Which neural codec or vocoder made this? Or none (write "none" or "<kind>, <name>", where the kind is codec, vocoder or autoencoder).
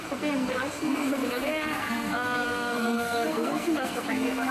codec, SNAC